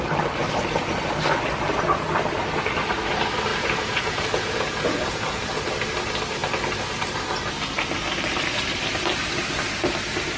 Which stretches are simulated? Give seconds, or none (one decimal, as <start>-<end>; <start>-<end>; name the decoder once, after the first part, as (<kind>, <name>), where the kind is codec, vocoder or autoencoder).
3.5-5.7 (vocoder, Vocos)